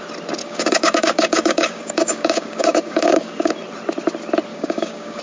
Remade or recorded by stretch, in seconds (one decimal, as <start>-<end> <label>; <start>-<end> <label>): 0.0-0.4 recorded; 0.4-3.5 remade; 3.5-4.5 recorded; 4.5-5.2 remade